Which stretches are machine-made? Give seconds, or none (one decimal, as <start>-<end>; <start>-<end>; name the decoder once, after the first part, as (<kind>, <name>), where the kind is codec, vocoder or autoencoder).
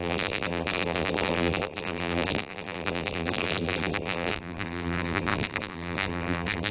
0.0-6.7 (vocoder, BigVGAN v2)